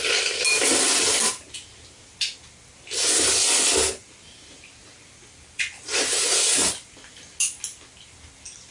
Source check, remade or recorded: recorded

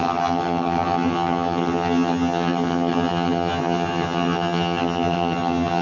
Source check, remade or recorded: remade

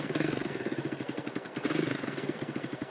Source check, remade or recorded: remade